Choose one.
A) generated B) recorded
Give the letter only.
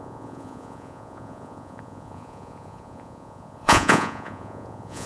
A